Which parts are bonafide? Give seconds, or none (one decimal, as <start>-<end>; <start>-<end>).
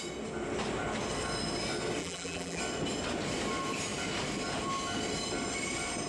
0.0-2.0; 2.6-6.1